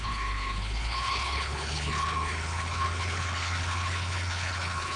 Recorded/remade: remade